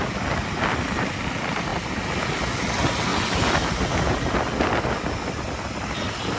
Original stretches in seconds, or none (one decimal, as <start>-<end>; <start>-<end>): 0.0-6.4